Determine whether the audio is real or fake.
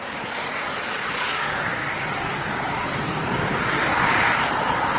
real